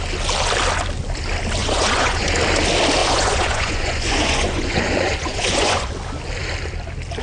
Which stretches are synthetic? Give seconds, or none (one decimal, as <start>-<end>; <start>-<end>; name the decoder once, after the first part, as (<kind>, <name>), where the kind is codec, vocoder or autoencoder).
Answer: 1.6-2.3 (vocoder, Vocos); 3.0-5.9